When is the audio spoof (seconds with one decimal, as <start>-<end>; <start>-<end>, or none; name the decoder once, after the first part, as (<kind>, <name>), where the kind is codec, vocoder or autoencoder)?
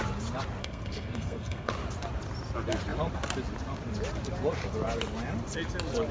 0.6-1.7 (codec, SNAC)